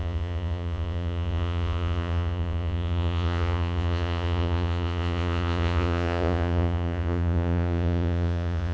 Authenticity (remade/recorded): remade